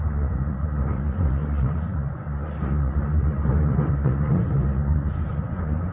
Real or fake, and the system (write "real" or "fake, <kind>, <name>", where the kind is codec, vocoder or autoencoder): fake, vocoder, Vocos